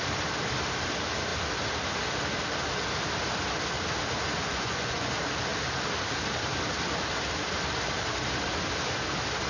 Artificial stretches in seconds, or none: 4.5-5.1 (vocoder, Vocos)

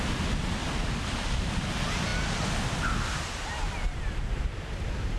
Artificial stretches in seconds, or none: none

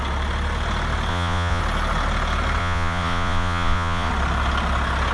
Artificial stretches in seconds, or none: 1.1-1.6 (vocoder, Vocos); 2.6-4.1

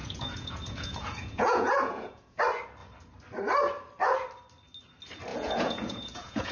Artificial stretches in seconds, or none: 0.0-2.4 (vocoder, Vocos); 5.3-6.5

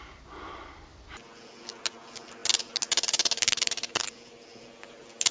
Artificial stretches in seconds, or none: none

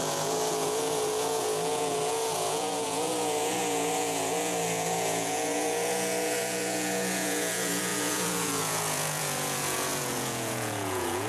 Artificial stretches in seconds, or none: 0.0-11.3 (vocoder, Vocos)

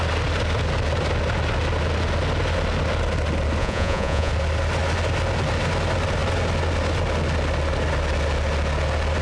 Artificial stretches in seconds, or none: 3.6-4.3 (vocoder, Vocos)